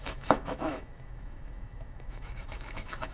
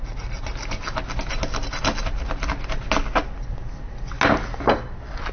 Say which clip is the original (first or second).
second